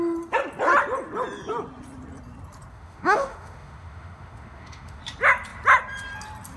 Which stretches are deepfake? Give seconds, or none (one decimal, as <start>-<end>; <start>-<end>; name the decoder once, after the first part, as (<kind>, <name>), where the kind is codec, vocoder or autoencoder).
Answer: 2.7-5.0 (autoencoder, DAC-VAE)